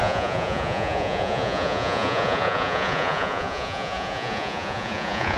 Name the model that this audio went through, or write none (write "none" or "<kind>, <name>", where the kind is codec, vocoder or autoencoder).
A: vocoder, Vocos